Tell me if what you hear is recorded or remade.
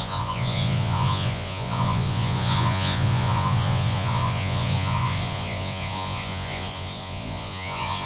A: remade